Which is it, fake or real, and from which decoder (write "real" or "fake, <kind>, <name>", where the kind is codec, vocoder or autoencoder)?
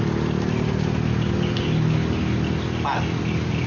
real